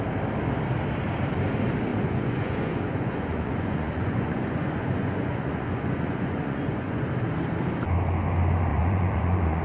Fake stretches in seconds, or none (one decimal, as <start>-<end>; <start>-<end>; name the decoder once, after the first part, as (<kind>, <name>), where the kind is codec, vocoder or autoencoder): 1.9-7.1 (vocoder, Vocos); 8.7-9.6